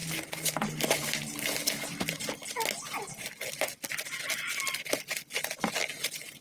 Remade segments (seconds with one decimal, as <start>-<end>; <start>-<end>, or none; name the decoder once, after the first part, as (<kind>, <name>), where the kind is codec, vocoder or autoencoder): none